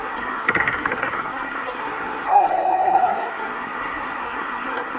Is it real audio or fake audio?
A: fake